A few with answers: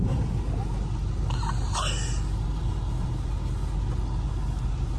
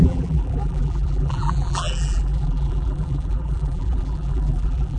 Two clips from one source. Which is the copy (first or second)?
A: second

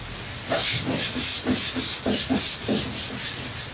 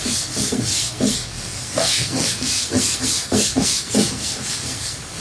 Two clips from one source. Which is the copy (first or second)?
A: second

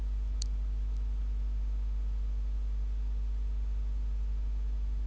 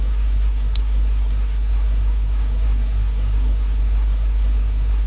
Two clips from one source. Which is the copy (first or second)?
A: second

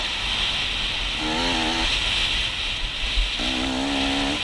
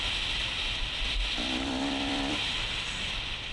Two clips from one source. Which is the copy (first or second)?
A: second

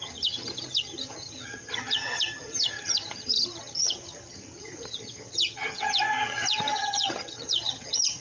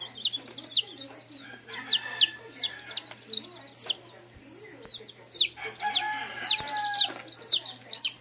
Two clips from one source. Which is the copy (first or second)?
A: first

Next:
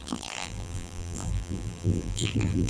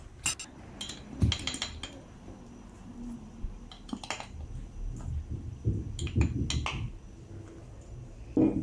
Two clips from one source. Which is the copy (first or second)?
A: first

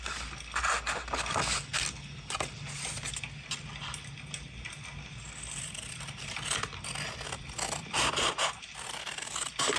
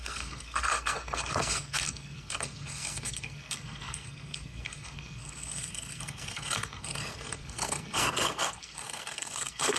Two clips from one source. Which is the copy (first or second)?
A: second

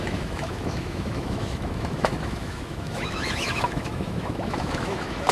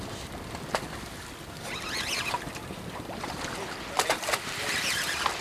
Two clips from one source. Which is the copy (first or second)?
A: first